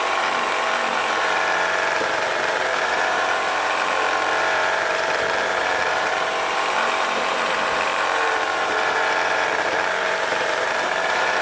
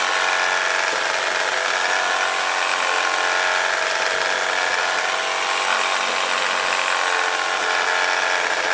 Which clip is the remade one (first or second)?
first